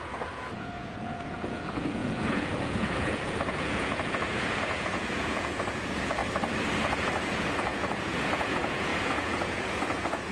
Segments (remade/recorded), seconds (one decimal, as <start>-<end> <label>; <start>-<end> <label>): 0.0-6.2 remade; 6.2-6.8 recorded; 6.8-10.3 remade